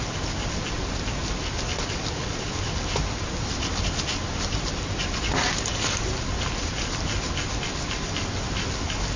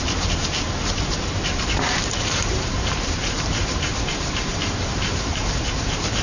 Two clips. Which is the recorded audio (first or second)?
first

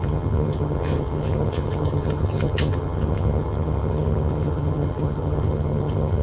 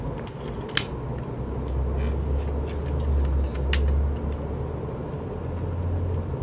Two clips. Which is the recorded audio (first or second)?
second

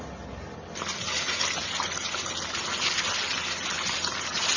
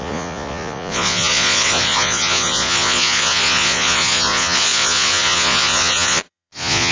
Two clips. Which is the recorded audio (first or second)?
first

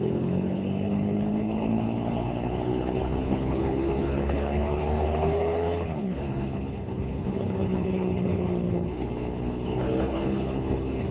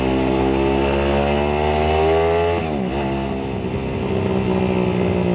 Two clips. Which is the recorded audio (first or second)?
second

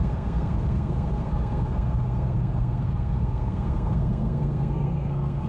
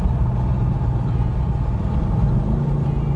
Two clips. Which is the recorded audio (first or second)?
second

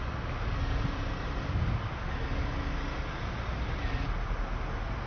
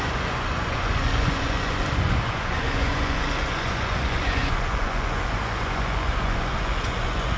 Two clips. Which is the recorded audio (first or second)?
first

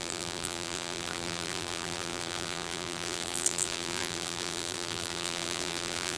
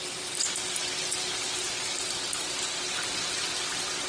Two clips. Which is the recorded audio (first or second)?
second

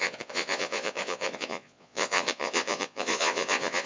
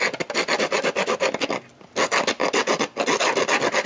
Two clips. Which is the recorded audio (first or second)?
second